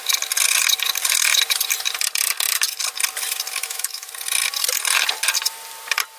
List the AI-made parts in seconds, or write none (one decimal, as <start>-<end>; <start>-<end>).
3.6-4.1